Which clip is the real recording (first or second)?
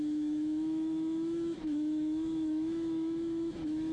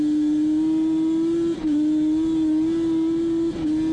second